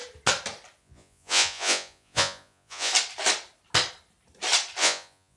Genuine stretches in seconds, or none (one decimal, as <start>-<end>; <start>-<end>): 0.0-0.8; 2.9-4.8